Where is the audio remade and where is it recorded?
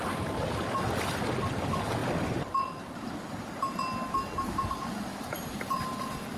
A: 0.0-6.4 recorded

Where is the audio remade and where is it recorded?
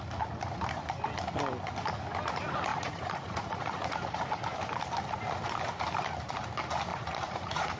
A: 0.0-2.7 recorded; 2.7-4.2 remade; 4.2-6.9 recorded; 6.9-7.8 remade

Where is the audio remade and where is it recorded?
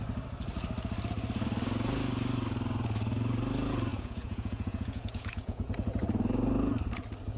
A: 0.0-3.9 recorded; 3.9-5.7 remade; 5.7-7.4 recorded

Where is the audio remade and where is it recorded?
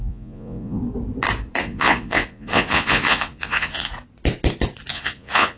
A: 0.0-0.8 remade; 0.8-1.6 recorded; 1.6-3.9 remade; 3.9-4.9 recorded; 4.9-5.6 remade